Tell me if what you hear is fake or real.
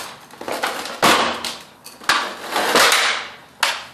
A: real